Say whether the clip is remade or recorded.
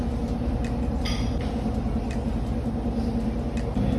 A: recorded